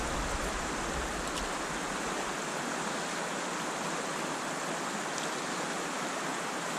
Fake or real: real